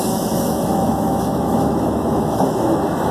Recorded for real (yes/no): no